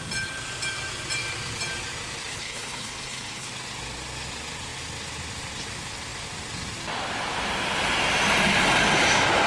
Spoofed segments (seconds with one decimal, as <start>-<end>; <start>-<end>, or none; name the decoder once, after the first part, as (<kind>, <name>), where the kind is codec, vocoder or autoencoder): 2.3-3.5 (codec, HILCodec)